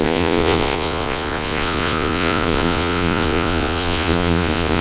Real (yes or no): no